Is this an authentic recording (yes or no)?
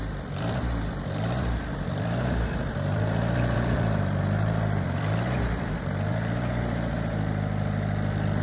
no